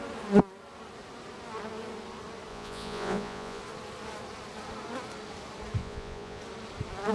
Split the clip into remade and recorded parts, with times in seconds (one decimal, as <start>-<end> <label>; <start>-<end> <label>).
0.0-2.5 recorded; 2.5-3.6 remade; 3.6-5.8 recorded; 5.8-6.4 remade; 6.4-7.1 recorded